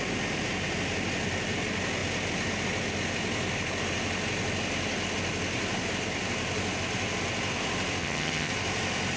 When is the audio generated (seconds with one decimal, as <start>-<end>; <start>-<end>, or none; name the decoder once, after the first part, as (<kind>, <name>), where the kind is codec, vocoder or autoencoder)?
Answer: 8.0-8.5 (vocoder, HiFi-GAN)